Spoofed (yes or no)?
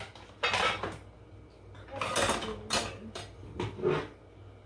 no